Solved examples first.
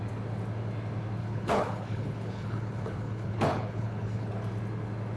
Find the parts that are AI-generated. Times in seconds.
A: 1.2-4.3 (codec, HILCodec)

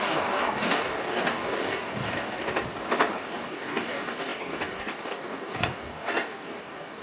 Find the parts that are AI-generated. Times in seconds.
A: 0.0-2.4 (codec, DAC); 3.1-7.0

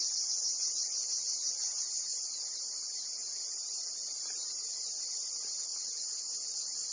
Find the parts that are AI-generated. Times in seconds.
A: none